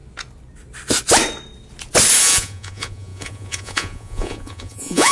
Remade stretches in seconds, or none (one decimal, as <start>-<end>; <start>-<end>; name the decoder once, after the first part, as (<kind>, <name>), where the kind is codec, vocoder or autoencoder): 2.2-5.1 (vocoder, Vocos)